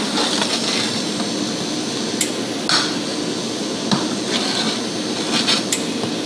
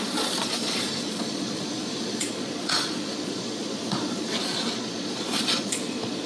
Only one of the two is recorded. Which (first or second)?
first